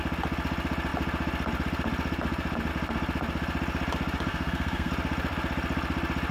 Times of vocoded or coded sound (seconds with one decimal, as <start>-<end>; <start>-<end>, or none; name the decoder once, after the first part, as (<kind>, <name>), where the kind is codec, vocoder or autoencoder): 4.3-4.9 (codec, SNAC)